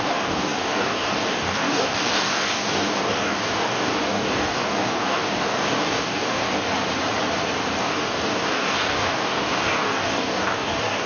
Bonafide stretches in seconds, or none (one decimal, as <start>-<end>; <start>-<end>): 6.5-7.8